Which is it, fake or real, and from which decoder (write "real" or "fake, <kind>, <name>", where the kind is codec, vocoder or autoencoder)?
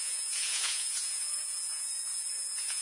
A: fake, vocoder, Vocos